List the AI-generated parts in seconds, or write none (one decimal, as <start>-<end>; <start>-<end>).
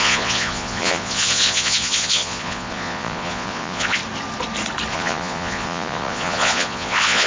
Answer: 0.0-4.0; 4.9-7.3